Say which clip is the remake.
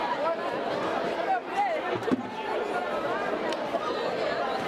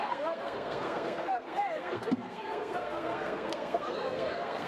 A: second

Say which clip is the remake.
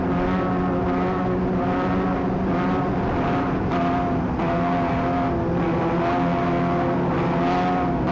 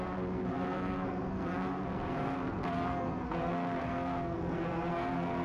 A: second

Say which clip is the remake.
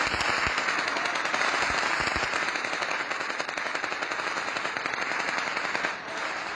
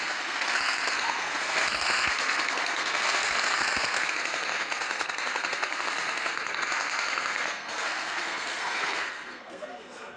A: second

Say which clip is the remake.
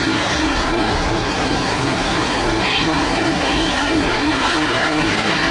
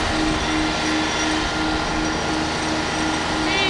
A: first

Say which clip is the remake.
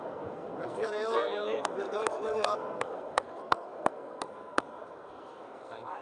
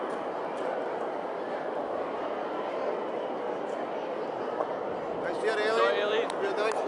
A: first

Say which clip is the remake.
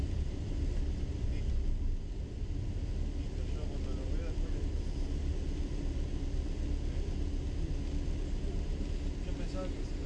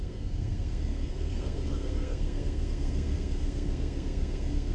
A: second